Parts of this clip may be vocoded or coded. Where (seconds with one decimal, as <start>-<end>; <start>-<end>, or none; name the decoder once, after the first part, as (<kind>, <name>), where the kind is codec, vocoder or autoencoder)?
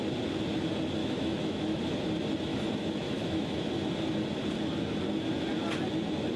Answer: 1.0-1.8 (autoencoder, DAC-VAE); 2.5-3.7